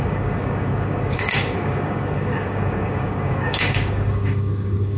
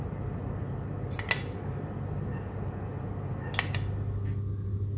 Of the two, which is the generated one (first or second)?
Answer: first